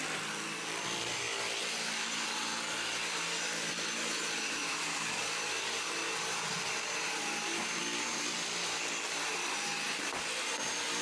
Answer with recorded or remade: recorded